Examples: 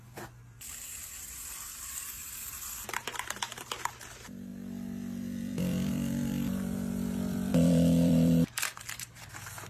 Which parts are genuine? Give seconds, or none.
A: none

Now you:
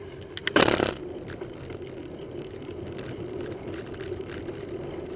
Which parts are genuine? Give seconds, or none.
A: 0.0-0.4; 1.0-2.0

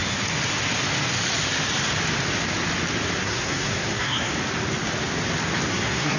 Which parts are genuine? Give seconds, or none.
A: 0.0-3.2; 4.3-5.7

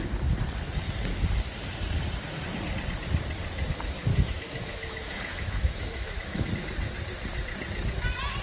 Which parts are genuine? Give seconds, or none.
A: 0.0-4.1; 6.5-8.4

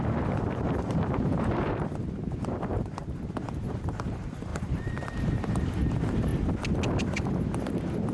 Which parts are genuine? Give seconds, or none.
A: 6.3-7.0

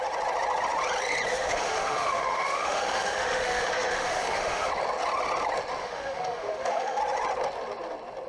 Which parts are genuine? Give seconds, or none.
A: 0.0-1.3; 4.7-5.8; 7.0-8.3